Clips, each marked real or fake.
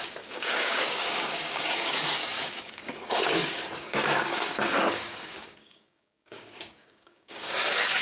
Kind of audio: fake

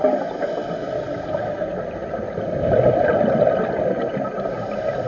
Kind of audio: real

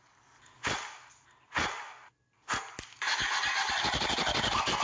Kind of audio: real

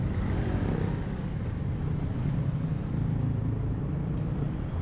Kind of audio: real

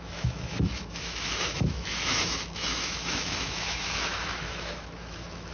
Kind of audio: fake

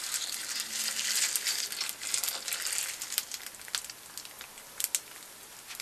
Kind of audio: real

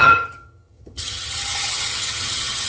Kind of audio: fake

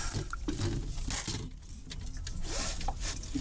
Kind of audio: real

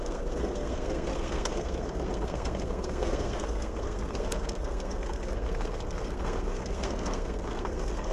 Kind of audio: fake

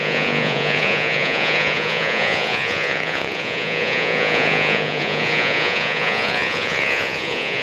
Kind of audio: fake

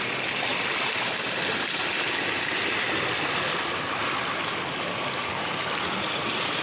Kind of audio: real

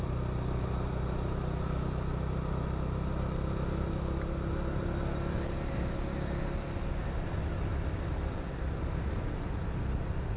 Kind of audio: real